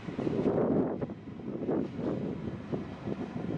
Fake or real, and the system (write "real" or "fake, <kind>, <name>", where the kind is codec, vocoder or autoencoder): real